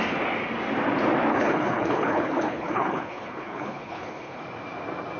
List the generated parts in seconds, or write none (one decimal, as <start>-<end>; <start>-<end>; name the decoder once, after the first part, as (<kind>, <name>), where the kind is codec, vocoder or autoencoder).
1.3-4.4 (codec, HILCodec)